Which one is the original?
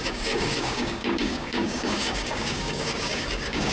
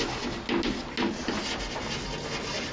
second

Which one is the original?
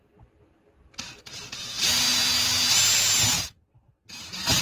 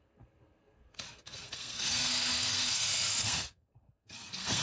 first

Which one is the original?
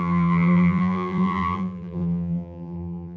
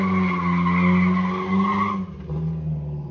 second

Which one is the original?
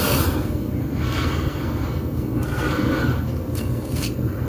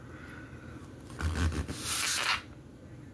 second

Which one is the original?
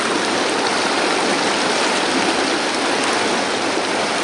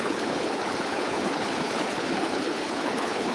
first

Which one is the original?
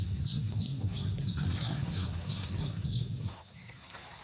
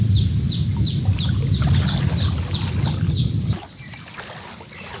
second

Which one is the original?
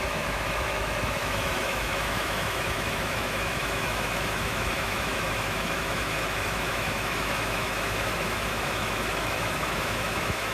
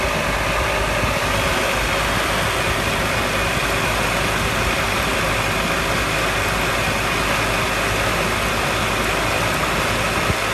second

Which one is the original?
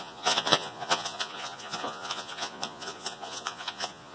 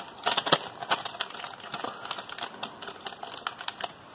second